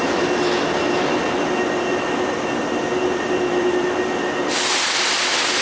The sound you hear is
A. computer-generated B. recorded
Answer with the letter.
B